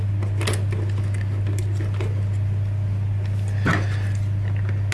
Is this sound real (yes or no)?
yes